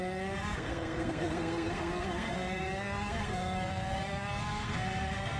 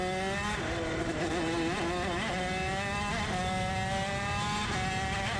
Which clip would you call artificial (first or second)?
first